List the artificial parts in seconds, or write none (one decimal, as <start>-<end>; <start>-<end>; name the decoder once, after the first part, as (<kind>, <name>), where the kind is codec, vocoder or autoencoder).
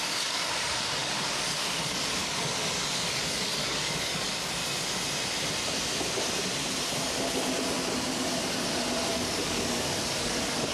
0.0-4.6 (codec, DAC); 9.1-10.7